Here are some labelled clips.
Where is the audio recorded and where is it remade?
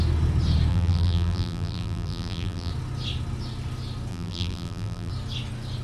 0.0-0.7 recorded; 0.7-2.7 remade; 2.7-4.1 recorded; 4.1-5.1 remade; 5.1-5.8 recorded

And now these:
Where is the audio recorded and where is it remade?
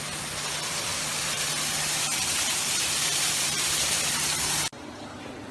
0.0-0.9 recorded; 0.9-4.0 remade; 4.0-5.5 recorded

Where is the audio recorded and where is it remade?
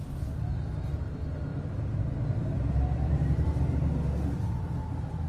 0.0-1.5 recorded; 1.5-3.9 remade; 3.9-5.3 recorded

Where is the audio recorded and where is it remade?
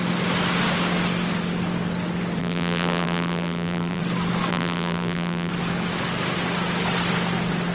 0.0-2.4 recorded; 2.4-4.0 remade; 4.0-4.5 recorded; 4.5-5.5 remade; 5.5-7.7 recorded